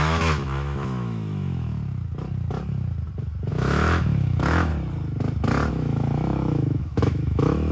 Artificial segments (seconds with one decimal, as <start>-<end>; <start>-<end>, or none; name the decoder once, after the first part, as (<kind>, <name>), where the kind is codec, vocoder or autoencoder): 0.0-1.8 (autoencoder, DAC-VAE); 3.5-4.7; 5.7-7.7